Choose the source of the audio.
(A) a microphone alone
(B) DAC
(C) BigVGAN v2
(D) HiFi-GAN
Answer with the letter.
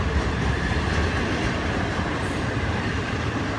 C